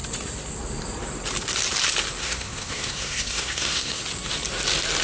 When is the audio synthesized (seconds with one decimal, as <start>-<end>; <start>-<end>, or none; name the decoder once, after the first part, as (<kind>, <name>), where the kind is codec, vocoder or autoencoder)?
2.2-4.0 (codec, SNAC)